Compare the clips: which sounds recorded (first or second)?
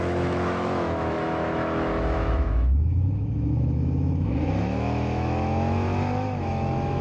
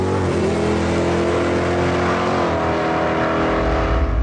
second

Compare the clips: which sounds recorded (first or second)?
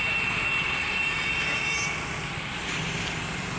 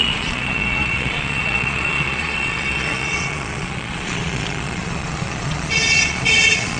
first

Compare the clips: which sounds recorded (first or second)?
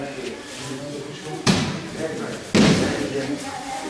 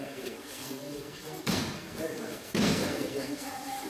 first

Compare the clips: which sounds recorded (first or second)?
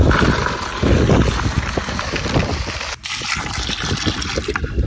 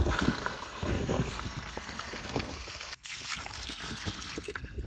first